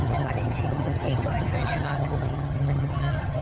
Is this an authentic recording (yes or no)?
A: no